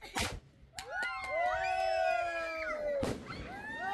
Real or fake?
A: real